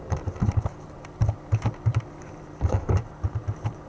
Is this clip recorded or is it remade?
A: remade